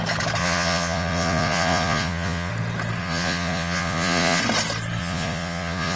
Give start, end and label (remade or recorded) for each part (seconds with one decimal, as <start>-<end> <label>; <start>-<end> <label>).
0.0-0.4 recorded; 0.4-2.5 remade; 2.5-3.0 recorded; 3.0-4.4 remade; 4.4-5.0 recorded; 5.0-6.0 remade